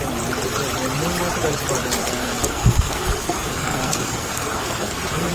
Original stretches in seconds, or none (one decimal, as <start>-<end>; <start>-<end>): 0.0-2.0